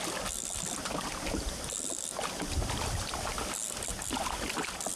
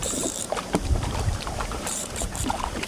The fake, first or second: second